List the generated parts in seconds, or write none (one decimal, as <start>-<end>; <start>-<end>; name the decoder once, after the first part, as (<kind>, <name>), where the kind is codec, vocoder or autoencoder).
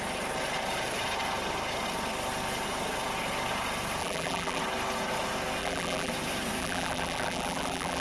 4.0-4.6 (vocoder, BigVGAN v2); 5.6-6.1; 6.6-8.0